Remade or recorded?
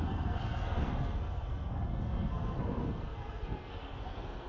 remade